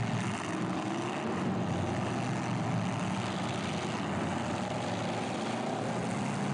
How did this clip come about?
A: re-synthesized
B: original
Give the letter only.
B